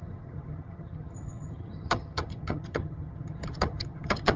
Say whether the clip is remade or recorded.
remade